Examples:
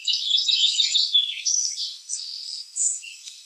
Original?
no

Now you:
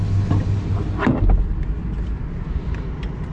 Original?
yes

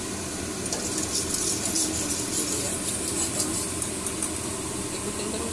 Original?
yes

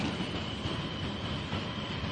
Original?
no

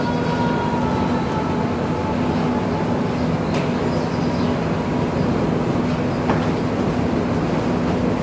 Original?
yes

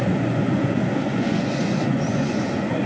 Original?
no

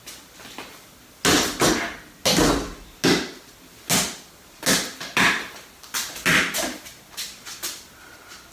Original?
yes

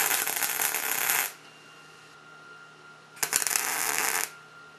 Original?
yes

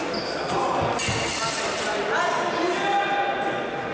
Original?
yes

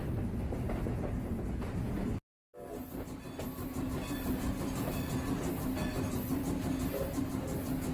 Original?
yes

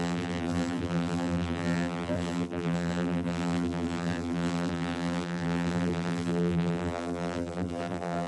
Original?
no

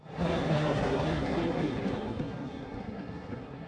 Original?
no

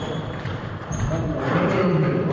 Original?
no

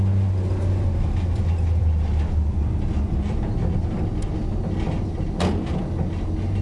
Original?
yes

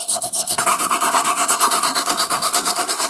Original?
no